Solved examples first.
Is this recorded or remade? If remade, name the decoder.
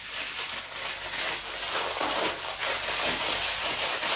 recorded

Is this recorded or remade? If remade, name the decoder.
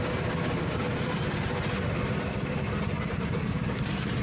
recorded